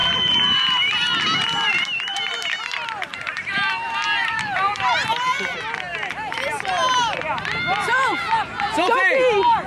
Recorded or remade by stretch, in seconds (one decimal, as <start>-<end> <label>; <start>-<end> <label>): 0.0-2.3 remade; 2.3-3.1 recorded; 3.1-4.9 remade; 4.9-5.9 recorded; 5.9-9.0 remade; 9.0-9.7 recorded